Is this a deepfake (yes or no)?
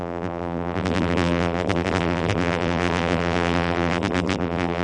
yes